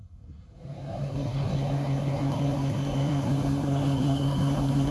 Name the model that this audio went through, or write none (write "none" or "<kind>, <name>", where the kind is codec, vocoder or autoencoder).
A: codec, SNAC